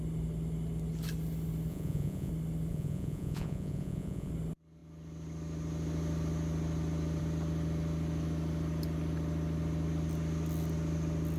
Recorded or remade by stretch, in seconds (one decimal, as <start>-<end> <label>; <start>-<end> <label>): 0.0-1.7 recorded; 1.7-2.3 remade; 2.3-2.7 recorded; 2.7-4.3 remade; 4.3-11.4 recorded